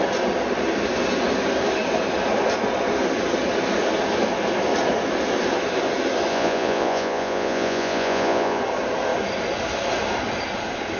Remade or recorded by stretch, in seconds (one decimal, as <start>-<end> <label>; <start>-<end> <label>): 0.0-6.3 recorded; 6.3-8.6 remade; 8.6-11.0 recorded